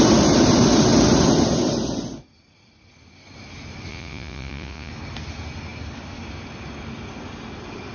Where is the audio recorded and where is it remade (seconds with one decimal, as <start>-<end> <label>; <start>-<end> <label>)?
0.0-3.9 recorded; 3.9-4.9 remade; 4.9-7.9 recorded